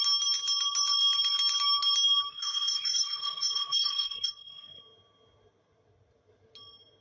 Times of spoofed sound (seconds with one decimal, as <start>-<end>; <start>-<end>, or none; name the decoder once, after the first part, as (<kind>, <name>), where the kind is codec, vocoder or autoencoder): 2.3-4.8 (codec, SNAC)